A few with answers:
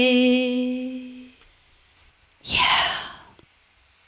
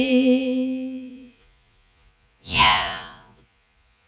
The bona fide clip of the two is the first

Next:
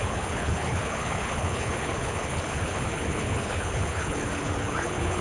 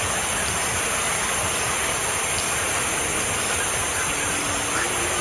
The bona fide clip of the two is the second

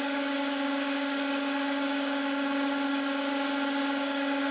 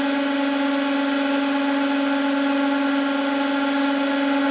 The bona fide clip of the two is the second